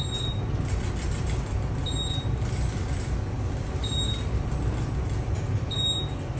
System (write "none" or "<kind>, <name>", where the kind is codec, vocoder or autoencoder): none